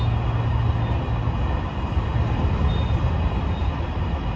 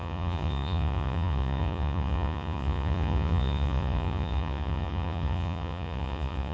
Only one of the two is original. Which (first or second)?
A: first